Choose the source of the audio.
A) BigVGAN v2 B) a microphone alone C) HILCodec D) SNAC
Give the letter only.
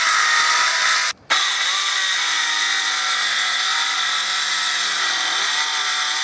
B